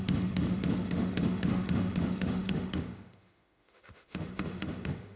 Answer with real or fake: fake